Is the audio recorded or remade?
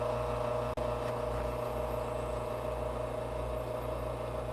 recorded